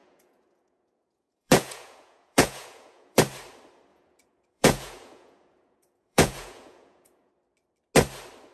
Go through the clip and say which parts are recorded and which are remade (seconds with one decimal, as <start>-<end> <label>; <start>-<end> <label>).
0.0-3.2 remade; 3.2-3.9 recorded; 3.9-7.3 remade; 7.3-8.5 recorded